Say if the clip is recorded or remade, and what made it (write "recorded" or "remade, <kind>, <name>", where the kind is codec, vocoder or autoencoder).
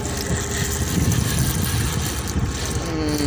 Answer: recorded